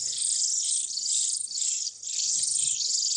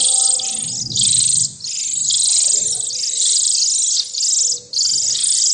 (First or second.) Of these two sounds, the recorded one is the second